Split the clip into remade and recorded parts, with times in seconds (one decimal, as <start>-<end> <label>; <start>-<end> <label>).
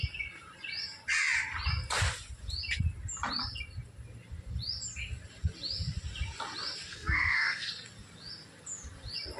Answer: 0.0-6.9 recorded; 6.9-7.7 remade; 7.7-9.4 recorded